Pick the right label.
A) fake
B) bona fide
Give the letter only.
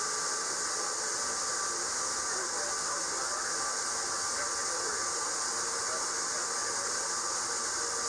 B